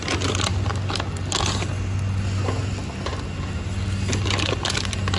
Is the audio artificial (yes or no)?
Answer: no